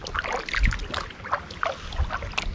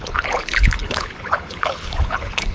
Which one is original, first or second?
first